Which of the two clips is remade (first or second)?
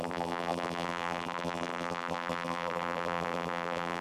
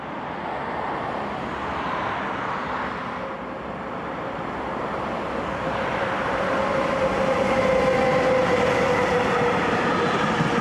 first